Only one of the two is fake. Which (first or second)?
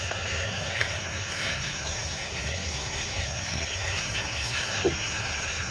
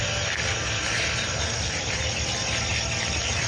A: first